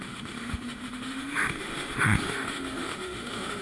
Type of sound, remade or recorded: remade